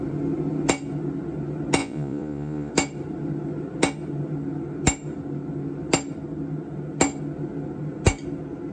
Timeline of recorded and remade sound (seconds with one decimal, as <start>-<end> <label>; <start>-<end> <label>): 0.0-1.8 recorded; 1.8-2.7 remade; 2.7-8.7 recorded